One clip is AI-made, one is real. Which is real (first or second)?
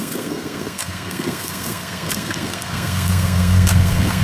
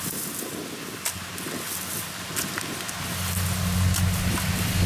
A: second